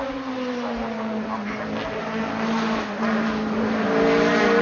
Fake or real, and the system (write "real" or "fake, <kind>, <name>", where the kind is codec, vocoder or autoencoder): real